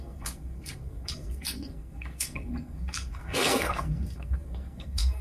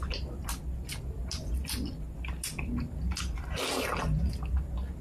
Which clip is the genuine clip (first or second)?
second